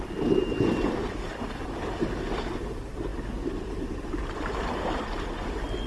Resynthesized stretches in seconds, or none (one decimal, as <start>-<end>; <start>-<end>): none